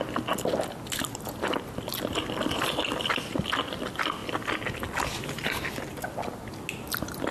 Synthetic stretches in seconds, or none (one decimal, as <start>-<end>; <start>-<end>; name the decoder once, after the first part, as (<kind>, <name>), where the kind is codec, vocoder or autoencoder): none

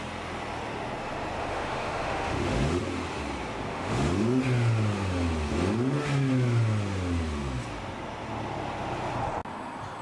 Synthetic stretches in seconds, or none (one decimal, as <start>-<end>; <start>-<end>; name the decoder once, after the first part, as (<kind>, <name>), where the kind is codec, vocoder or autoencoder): 1.4-2.8 (autoencoder, DAC-VAE); 3.7-4.4

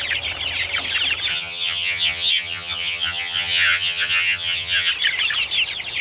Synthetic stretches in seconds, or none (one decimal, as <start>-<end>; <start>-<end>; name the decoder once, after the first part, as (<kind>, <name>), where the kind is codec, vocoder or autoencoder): 1.3-4.9 (vocoder, HiFi-GAN)

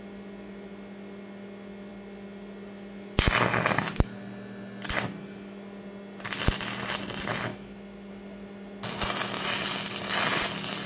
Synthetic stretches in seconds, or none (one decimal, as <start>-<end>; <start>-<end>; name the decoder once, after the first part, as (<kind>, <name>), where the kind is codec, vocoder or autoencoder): none

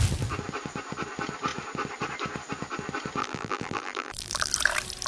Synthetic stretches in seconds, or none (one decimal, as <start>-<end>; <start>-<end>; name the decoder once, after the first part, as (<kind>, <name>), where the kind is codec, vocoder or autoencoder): 3.2-4.5 (vocoder, BigVGAN v2)